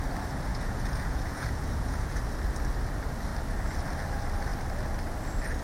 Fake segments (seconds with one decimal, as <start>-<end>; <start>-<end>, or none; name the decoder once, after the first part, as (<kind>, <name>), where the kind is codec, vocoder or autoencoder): 0.5-2.2 (vocoder, Vocos)